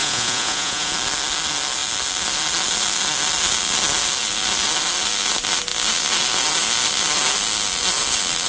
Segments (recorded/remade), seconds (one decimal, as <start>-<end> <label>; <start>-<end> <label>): 0.0-0.9 remade; 0.9-8.5 recorded